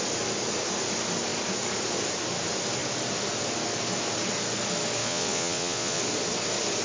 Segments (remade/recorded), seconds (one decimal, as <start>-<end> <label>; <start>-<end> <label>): 0.0-5.0 recorded; 5.0-6.0 remade; 6.0-6.8 recorded